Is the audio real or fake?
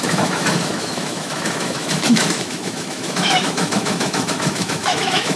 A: fake